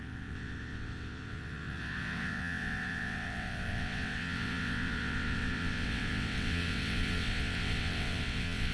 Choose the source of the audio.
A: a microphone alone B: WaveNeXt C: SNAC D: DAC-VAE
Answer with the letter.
B